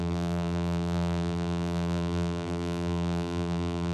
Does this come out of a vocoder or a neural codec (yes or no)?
yes